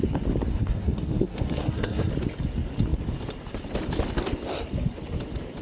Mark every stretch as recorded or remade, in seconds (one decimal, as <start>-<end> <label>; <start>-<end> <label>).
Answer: 0.0-0.5 recorded; 0.5-2.1 remade; 2.1-5.6 recorded